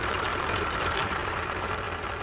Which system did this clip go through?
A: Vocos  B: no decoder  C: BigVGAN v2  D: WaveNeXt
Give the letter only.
C